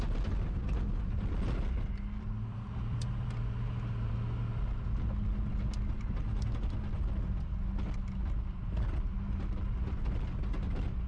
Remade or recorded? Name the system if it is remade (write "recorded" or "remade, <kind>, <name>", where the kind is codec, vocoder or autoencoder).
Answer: recorded